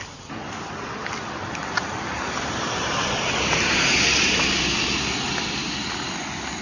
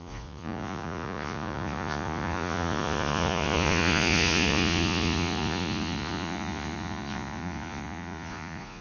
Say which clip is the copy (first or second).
second